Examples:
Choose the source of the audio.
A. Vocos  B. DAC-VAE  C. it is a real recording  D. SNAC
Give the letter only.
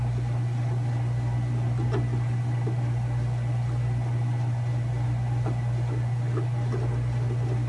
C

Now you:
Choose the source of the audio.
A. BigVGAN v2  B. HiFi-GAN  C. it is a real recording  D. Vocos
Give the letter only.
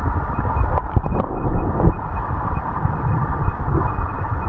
A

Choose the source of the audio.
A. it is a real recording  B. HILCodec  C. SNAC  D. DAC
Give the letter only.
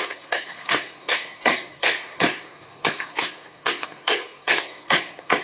C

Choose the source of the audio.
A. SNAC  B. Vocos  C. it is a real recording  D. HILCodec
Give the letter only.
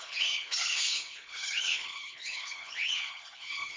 D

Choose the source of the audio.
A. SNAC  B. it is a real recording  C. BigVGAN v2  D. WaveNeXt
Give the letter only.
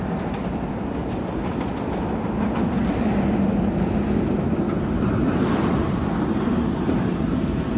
B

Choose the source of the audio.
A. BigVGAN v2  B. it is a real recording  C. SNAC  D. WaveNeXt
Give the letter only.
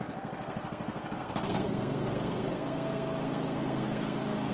C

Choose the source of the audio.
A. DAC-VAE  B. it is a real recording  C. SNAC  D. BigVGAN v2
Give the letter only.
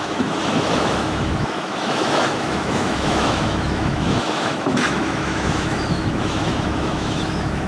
A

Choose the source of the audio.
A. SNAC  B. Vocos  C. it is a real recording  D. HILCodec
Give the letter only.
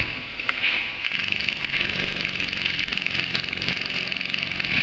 A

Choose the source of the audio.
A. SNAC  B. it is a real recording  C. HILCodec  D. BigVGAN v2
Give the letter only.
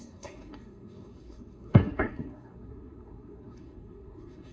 A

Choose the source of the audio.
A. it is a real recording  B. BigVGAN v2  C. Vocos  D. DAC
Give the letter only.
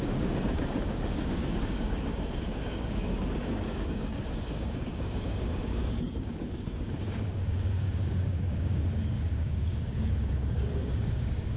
D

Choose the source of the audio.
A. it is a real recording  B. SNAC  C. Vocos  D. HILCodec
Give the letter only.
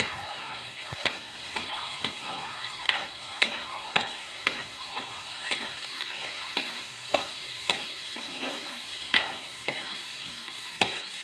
B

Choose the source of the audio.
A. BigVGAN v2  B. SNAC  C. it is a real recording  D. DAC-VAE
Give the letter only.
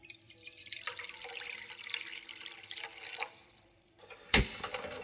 A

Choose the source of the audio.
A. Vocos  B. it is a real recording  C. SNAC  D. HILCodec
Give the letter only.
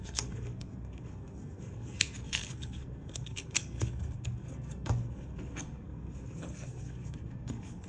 C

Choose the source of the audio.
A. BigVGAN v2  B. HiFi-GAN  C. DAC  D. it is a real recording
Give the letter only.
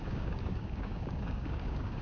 C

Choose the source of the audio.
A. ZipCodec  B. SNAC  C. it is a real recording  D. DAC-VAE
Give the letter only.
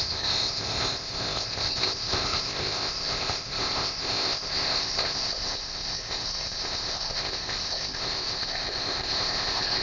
A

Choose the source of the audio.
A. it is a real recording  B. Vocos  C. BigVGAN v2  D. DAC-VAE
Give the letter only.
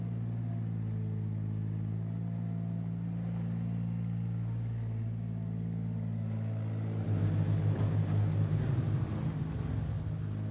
A